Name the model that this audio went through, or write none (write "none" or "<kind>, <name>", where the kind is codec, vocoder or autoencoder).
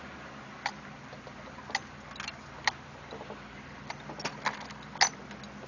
none